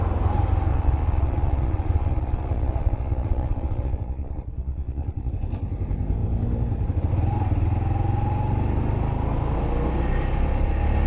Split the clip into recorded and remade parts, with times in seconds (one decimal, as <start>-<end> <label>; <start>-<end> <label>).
0.0-0.7 recorded; 0.7-5.3 remade; 5.3-11.1 recorded